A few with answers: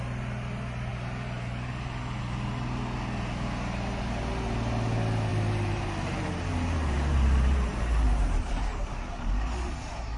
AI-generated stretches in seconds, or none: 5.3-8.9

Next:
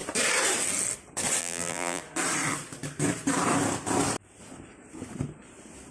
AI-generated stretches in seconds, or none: 1.4-2.0

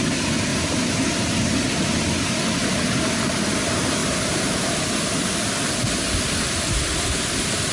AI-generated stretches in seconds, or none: 0.5-1.0; 4.0-4.7

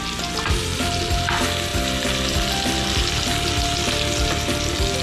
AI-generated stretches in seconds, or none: none

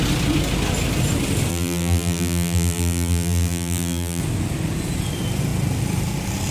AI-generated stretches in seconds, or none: 1.5-4.2